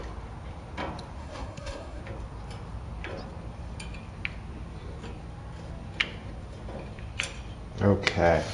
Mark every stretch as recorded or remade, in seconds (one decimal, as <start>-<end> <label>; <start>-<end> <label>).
0.0-1.2 recorded; 1.2-2.0 remade; 2.0-8.5 recorded